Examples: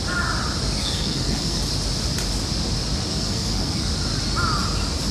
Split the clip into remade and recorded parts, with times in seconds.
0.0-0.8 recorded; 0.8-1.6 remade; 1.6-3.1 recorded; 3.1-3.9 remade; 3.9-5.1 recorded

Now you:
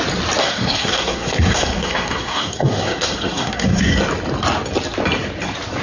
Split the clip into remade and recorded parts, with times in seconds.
0.0-0.4 recorded; 0.4-3.9 remade; 3.9-5.8 recorded

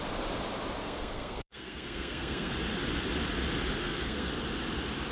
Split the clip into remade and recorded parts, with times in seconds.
0.0-0.8 recorded; 0.8-2.5 remade; 2.5-3.8 recorded; 3.8-4.3 remade; 4.3-5.1 recorded

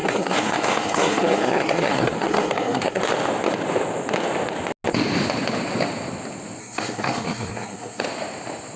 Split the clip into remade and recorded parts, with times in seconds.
0.0-3.0 remade; 3.0-6.6 recorded; 6.6-8.0 remade; 8.0-8.8 recorded

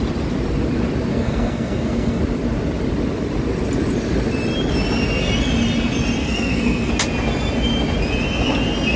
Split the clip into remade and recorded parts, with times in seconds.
0.0-1.1 recorded; 1.1-2.2 remade; 2.2-6.2 recorded; 6.2-6.9 remade; 6.9-9.0 recorded

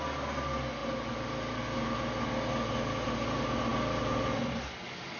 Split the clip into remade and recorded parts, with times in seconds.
0.0-5.2 recorded

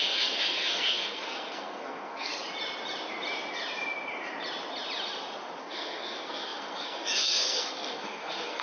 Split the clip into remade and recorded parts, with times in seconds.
0.0-2.3 remade; 2.3-5.6 recorded; 5.6-8.6 remade

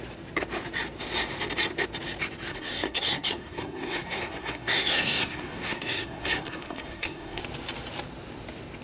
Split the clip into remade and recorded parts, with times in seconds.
0.0-2.5 recorded; 2.5-7.4 remade; 7.4-8.8 recorded